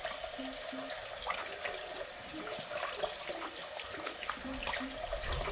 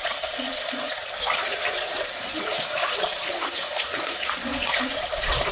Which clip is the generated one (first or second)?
second